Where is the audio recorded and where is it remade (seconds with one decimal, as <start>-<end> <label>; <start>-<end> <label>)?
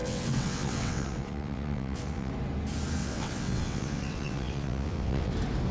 0.0-2.3 remade; 2.3-3.0 recorded; 3.0-5.3 remade; 5.3-5.7 recorded